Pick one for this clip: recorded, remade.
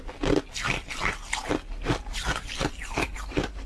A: recorded